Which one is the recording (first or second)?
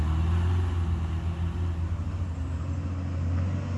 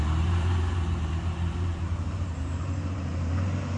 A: first